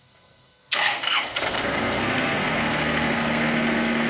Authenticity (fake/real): fake